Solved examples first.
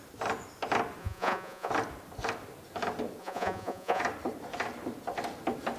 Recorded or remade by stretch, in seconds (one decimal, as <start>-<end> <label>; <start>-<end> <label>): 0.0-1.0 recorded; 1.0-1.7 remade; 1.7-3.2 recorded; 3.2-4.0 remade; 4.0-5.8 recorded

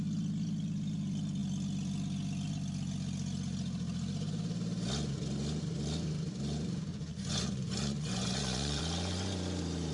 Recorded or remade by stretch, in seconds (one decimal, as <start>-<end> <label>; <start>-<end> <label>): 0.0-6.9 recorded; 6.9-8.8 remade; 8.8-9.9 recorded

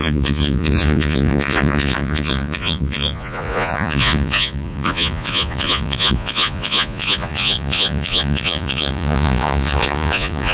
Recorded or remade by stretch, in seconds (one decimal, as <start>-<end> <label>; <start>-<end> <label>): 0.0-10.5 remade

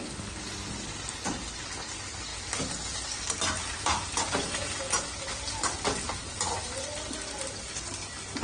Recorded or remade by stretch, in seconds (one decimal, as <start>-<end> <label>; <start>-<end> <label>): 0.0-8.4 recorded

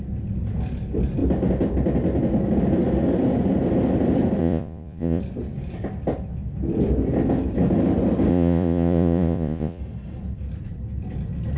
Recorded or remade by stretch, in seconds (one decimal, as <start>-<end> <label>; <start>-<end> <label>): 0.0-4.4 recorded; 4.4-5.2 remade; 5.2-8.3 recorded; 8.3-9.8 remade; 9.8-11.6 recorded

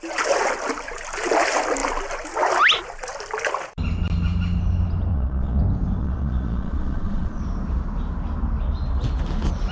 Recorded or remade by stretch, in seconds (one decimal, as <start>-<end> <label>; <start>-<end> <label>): 0.0-5.1 recorded; 5.1-5.6 remade; 5.6-6.0 recorded; 6.0-7.4 remade; 7.4-9.7 recorded